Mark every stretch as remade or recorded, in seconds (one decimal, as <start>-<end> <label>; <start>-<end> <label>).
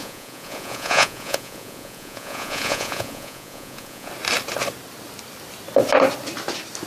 0.0-4.1 remade; 4.1-6.9 recorded